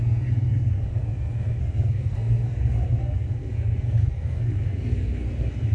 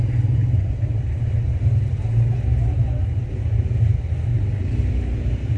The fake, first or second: first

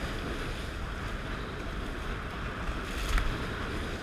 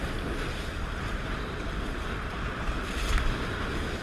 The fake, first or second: second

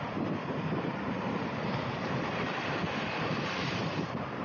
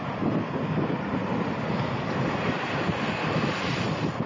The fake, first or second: first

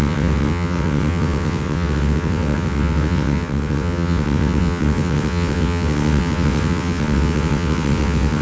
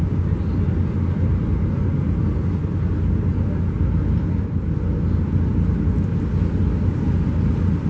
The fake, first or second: first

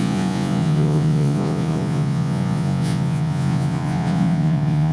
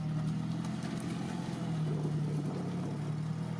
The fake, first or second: first